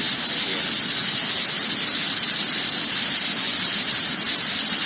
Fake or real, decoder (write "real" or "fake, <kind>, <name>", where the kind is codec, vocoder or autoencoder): real